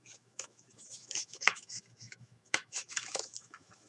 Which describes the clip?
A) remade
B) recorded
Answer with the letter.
A